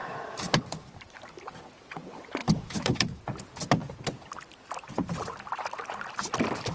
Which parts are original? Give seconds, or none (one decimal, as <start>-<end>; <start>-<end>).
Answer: 0.6-2.4; 3.2-6.7